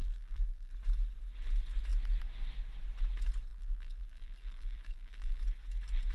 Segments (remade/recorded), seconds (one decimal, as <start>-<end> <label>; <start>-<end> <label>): 0.0-0.7 remade; 0.7-3.5 recorded; 3.5-5.4 remade; 5.4-6.1 recorded